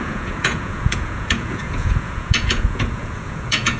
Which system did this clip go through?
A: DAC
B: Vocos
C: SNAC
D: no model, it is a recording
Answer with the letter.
B